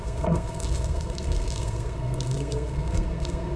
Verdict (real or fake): fake